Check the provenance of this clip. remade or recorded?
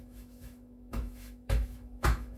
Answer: remade